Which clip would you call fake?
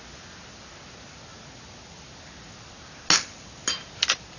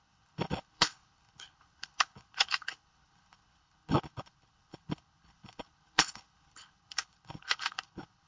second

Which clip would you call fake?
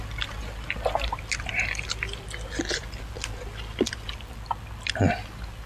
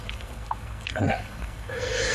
second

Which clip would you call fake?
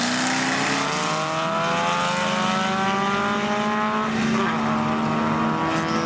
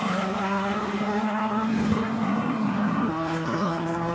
second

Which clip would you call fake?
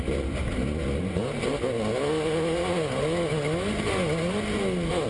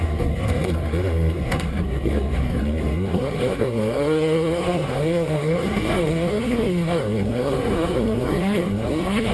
second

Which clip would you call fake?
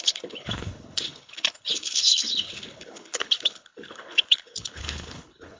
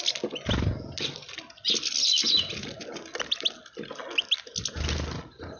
first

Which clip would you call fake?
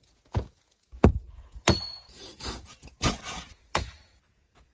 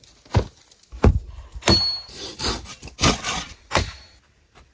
first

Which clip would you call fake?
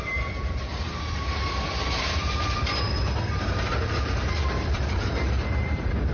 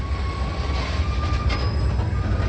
first